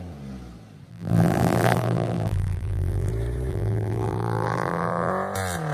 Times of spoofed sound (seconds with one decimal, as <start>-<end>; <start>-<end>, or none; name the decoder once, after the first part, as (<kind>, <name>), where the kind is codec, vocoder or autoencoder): 0.9-3.1 (vocoder, BigVGAN v2); 3.5-5.1